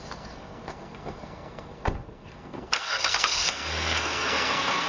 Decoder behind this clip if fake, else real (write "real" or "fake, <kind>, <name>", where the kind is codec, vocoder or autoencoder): fake, codec, SNAC